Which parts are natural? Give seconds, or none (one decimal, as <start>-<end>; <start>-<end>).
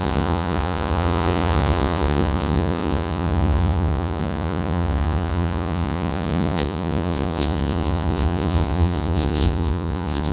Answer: none